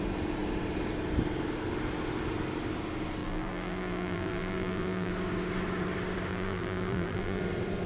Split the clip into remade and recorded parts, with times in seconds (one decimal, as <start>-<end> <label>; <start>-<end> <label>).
0.0-3.2 recorded; 3.2-5.1 remade; 5.1-6.3 recorded; 6.3-7.4 remade; 7.4-7.9 recorded